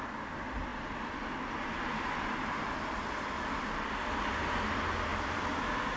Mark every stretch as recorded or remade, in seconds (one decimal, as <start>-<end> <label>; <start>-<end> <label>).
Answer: 0.0-6.0 remade